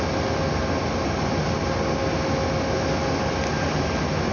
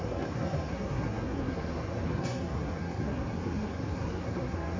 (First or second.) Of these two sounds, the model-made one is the second